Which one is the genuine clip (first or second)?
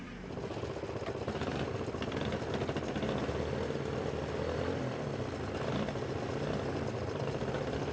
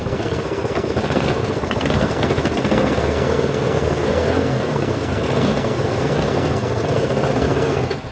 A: first